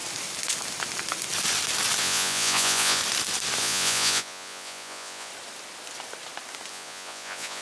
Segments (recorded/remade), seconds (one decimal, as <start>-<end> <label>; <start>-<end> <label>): 0.0-2.0 recorded; 2.0-3.0 remade; 3.0-3.6 recorded; 3.6-5.3 remade; 5.3-6.7 recorded; 6.7-7.6 remade